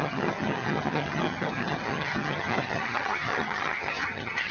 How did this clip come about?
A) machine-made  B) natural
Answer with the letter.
A